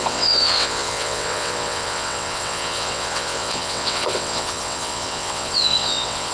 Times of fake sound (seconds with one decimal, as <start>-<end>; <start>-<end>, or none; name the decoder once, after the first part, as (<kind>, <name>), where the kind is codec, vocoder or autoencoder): 0.0-6.3 (vocoder, WaveNeXt)